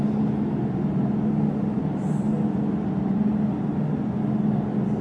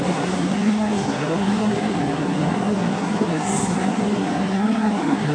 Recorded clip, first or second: first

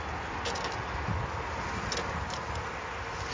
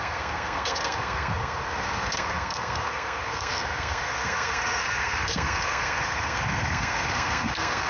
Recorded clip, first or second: first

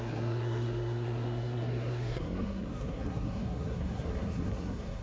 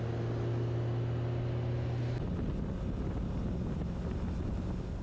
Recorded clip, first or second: second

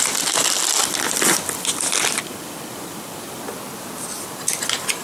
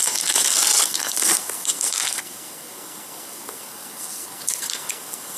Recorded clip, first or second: first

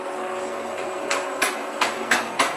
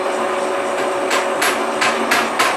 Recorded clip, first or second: second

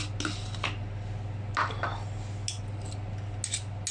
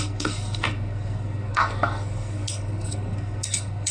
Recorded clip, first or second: first